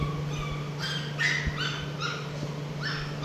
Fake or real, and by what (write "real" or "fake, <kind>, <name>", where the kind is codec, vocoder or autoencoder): real